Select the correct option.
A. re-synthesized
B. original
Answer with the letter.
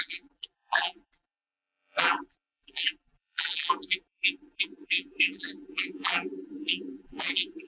A